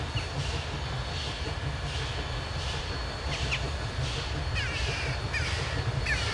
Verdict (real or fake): real